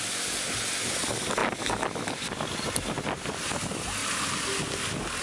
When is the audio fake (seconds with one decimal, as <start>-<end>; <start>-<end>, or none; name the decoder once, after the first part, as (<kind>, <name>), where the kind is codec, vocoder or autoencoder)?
none